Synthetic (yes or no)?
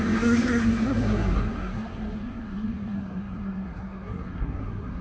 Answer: yes